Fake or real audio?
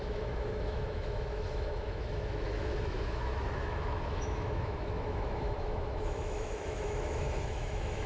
fake